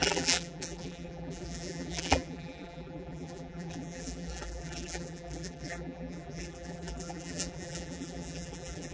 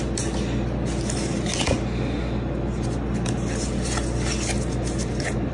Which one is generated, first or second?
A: first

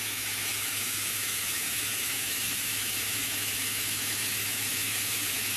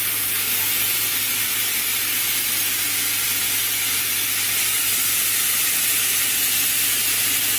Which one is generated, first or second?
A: first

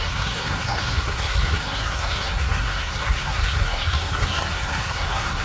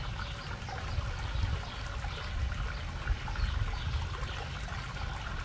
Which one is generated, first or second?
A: first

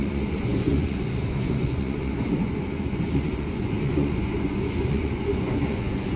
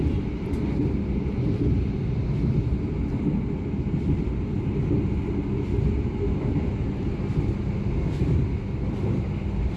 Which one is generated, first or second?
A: first